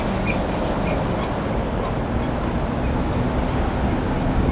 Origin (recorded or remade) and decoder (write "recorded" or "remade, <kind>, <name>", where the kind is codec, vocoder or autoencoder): recorded